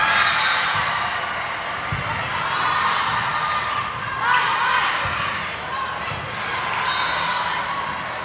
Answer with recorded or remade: recorded